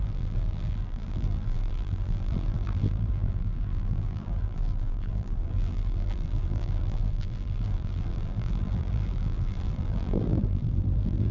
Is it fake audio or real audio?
fake